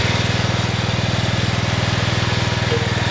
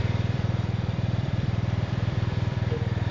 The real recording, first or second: first